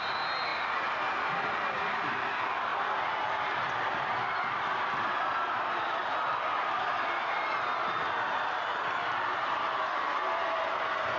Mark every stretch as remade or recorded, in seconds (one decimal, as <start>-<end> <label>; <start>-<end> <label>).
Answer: 0.0-11.2 recorded

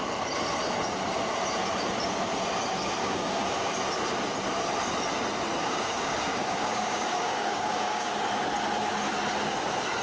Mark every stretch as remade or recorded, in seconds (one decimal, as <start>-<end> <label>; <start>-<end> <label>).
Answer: 0.0-3.0 recorded; 3.0-3.7 remade; 3.7-5.6 recorded; 5.6-8.1 remade; 8.1-10.0 recorded

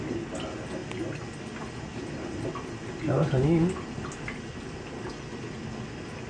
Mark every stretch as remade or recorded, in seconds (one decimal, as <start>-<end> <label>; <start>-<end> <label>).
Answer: 0.0-6.3 recorded

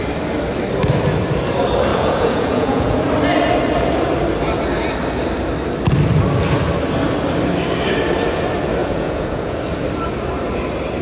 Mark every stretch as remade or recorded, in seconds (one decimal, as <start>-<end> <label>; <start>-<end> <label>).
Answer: 0.0-1.9 recorded; 1.9-3.0 remade; 3.0-8.8 recorded; 8.8-9.6 remade; 9.6-11.0 recorded